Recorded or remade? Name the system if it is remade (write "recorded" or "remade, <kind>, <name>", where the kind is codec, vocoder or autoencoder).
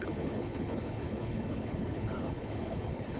remade, codec, HILCodec